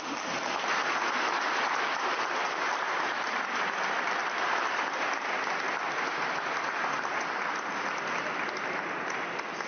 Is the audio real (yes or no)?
yes